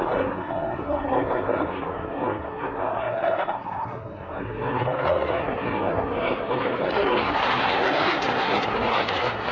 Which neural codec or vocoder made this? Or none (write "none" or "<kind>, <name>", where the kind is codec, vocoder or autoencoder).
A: codec, SNAC